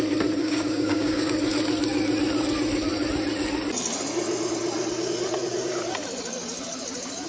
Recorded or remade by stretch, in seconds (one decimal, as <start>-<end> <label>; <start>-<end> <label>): 0.0-0.4 recorded; 0.4-1.3 remade; 1.3-7.3 recorded